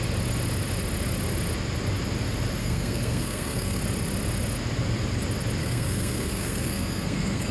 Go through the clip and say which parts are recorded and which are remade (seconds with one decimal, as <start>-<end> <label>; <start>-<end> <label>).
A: 0.0-2.6 recorded; 2.6-3.8 remade; 3.8-5.6 recorded; 5.6-7.5 remade